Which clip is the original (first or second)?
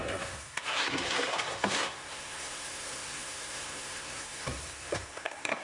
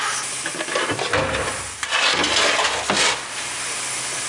second